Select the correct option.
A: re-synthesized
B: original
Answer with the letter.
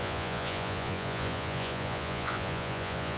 A